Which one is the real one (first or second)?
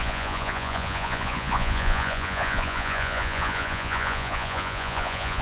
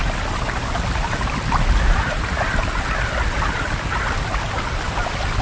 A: second